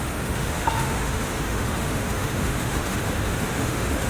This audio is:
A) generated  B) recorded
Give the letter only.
A